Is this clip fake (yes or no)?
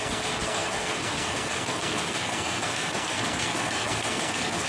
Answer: yes